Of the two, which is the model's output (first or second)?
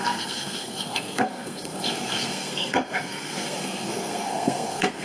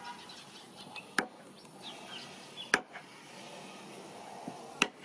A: first